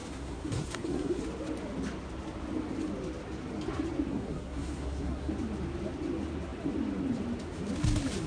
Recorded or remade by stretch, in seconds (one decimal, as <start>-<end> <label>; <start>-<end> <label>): 0.0-1.2 remade; 1.2-4.1 recorded; 4.1-5.3 remade; 5.3-8.3 recorded